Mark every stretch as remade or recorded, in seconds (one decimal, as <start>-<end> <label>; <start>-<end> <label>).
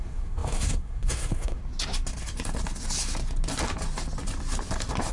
0.0-1.6 remade; 1.6-5.1 recorded